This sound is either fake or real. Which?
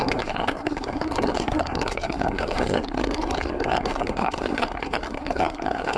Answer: fake